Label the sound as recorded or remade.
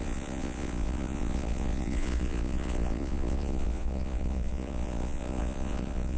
remade